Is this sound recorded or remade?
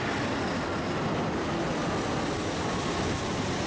recorded